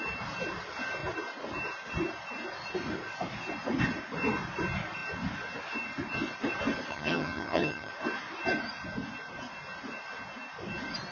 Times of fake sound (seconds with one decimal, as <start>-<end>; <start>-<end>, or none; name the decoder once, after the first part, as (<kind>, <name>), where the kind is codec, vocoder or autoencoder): 6.9-7.9 (vocoder, HiFi-GAN)